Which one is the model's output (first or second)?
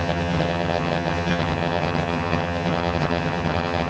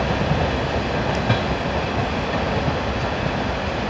first